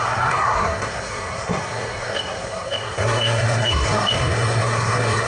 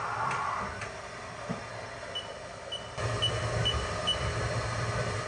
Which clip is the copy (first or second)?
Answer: first